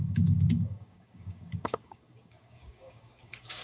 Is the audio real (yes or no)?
no